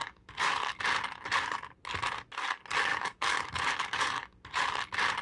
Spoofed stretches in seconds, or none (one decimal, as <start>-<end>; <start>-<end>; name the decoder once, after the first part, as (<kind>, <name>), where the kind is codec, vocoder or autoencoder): 0.0-0.8 (codec, DAC); 2.9-4.6